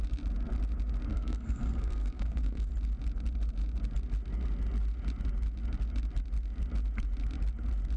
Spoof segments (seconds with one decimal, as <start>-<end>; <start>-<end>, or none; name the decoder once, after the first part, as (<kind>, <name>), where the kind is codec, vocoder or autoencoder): 1.1-2.7 (codec, SNAC)